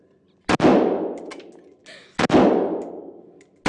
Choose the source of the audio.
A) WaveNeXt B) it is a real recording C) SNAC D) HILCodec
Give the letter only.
B